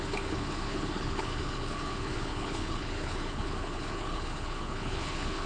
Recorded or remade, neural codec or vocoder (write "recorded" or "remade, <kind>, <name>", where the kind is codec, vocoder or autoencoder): remade, codec, HILCodec